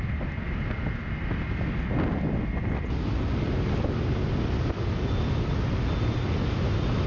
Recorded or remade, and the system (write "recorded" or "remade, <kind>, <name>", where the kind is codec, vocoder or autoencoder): recorded